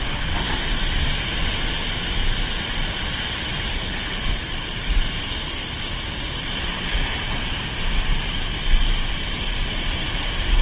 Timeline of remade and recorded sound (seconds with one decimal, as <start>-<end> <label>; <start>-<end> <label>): 0.0-3.7 recorded; 3.7-4.8 remade; 4.8-10.6 recorded